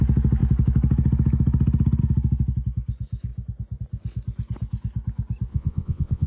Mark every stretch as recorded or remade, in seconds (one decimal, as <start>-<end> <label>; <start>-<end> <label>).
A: 0.0-5.5 recorded; 5.5-6.3 remade